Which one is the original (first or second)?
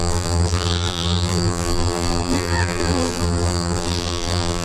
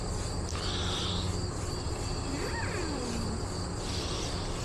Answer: second